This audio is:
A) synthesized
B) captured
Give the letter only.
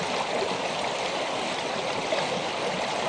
B